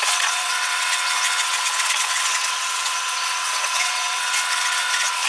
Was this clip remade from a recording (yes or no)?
yes